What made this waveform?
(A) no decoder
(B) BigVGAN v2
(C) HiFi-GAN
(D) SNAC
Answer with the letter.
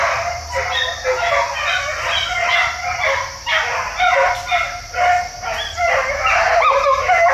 A